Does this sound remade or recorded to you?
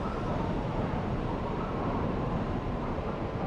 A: remade